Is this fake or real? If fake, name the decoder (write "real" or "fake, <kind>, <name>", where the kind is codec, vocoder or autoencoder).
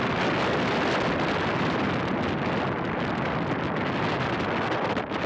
real